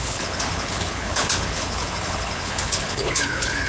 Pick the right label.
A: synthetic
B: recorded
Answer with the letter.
A